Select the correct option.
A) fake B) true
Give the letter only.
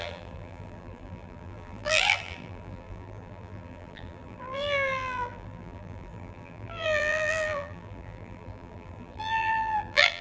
A